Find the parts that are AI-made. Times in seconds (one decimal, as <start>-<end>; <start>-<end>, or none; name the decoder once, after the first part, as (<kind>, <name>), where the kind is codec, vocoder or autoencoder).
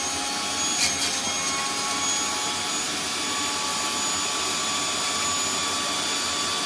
none